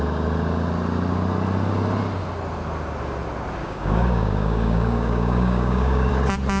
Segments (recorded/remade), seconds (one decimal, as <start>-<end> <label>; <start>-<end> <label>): 0.0-3.6 recorded; 3.6-6.1 remade; 6.1-6.6 recorded